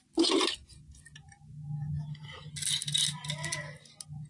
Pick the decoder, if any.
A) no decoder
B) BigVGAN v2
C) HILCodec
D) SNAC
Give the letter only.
A